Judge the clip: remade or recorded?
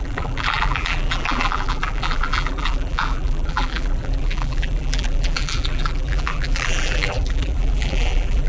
remade